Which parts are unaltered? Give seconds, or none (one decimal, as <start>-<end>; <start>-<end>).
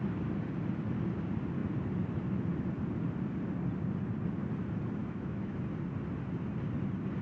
0.0-5.0; 5.6-7.2